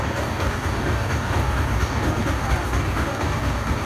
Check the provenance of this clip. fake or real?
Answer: fake